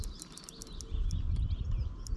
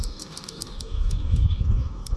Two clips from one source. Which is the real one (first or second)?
first